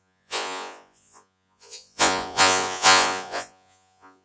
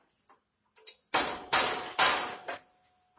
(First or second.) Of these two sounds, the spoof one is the first